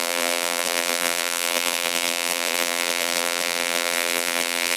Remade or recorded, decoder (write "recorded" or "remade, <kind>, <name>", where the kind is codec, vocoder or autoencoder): remade, vocoder, BigVGAN v2